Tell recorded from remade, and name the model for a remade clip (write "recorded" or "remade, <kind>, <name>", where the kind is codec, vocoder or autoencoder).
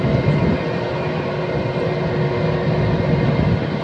recorded